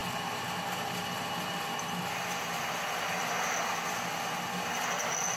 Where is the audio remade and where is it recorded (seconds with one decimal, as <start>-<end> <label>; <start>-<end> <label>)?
0.0-5.4 recorded